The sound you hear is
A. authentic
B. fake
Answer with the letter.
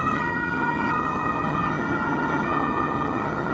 B